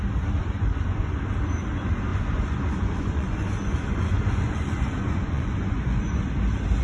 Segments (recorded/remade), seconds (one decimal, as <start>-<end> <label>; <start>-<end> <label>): 0.0-0.4 recorded; 0.4-1.1 remade; 1.1-2.1 recorded; 2.1-6.2 remade; 6.2-6.8 recorded